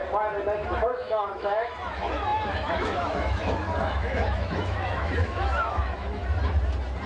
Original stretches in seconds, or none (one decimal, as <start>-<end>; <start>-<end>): 0.0-0.7; 6.2-7.1